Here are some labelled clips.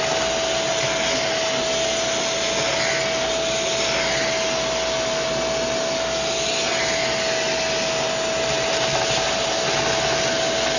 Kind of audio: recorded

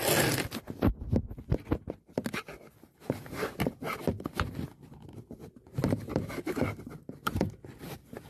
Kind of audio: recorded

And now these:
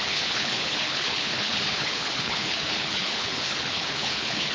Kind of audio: remade